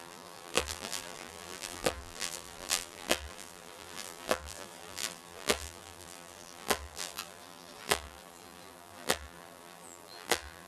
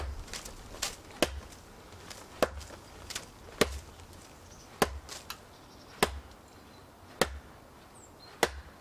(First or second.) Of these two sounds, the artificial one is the first